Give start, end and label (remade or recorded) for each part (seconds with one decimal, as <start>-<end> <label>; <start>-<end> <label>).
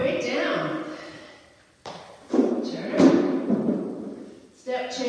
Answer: 0.0-5.1 recorded